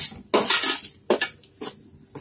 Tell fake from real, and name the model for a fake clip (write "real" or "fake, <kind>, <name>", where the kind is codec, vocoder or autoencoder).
real